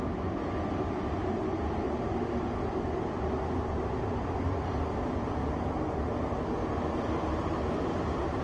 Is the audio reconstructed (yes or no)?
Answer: no